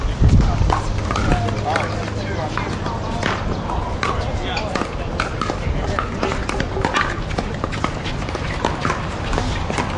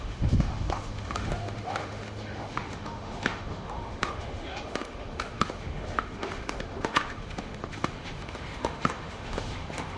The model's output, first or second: second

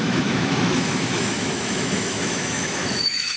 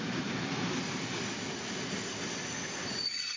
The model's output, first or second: first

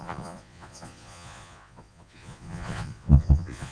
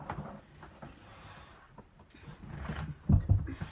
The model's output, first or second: first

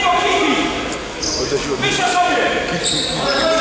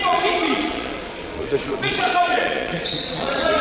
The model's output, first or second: second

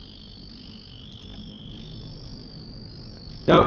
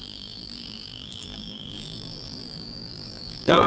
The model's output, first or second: second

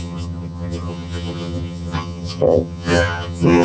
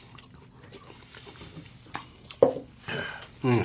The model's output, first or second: first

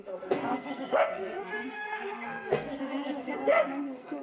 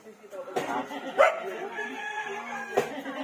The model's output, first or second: first